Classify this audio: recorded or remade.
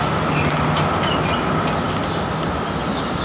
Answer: recorded